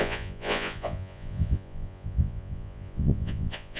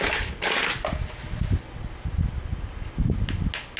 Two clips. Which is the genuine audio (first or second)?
second